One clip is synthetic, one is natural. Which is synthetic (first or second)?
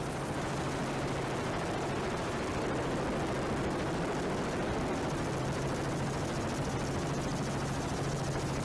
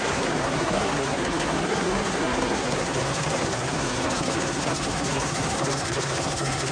second